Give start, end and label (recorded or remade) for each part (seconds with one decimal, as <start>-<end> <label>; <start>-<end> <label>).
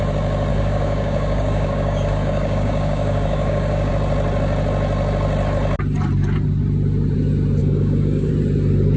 0.0-0.5 recorded; 0.5-3.9 remade; 3.9-7.6 recorded; 7.6-8.3 remade; 8.3-9.0 recorded